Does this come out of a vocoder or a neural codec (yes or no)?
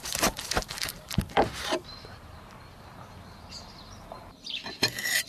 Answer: yes